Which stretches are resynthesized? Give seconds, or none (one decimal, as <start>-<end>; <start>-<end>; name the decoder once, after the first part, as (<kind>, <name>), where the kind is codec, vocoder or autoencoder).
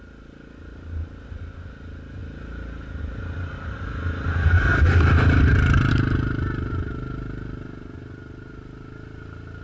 none